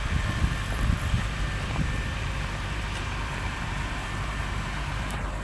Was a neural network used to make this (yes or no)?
yes